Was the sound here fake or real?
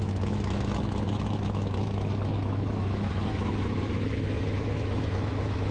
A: fake